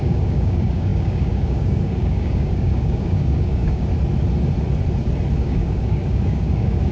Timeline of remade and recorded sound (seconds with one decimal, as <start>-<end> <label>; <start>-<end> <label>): 0.0-3.9 remade; 3.9-5.3 recorded; 5.3-6.9 remade